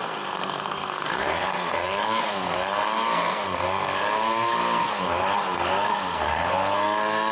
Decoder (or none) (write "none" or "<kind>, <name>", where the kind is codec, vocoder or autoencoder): codec, SNAC